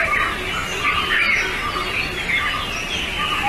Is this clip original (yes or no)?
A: yes